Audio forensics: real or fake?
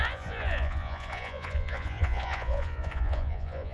fake